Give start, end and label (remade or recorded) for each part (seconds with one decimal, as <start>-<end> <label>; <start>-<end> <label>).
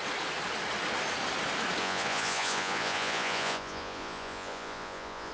0.0-1.8 recorded; 1.8-5.3 remade